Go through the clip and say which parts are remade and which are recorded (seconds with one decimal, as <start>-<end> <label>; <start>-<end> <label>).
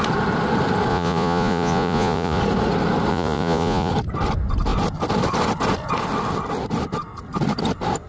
0.0-0.9 recorded; 0.9-2.4 remade; 2.4-3.1 recorded; 3.1-3.9 remade; 3.9-8.1 recorded